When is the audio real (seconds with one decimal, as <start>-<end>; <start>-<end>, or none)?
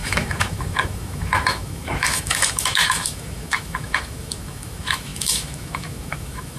none